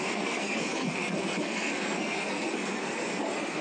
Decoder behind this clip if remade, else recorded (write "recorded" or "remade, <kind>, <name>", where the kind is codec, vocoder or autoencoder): remade, codec, SNAC